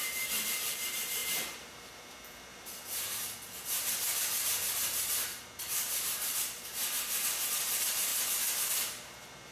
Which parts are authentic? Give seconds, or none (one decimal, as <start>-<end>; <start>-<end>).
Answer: 8.1-8.6